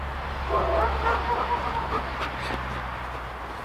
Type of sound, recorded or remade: recorded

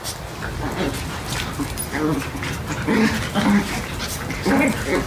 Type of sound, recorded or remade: recorded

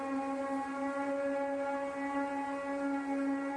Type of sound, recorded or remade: recorded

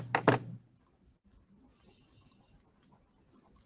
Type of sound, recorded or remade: recorded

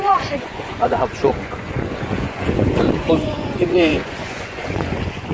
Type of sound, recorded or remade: remade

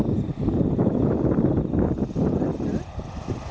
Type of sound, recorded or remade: recorded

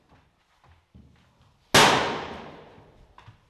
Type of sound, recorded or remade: recorded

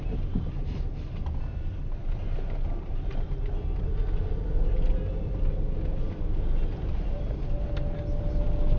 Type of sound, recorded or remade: recorded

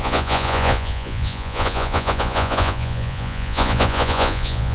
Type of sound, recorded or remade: remade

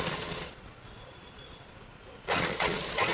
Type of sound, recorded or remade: remade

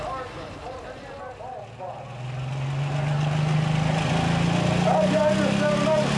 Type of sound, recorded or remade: recorded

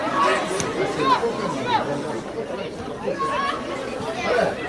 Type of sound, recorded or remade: recorded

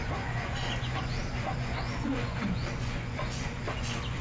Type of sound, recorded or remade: remade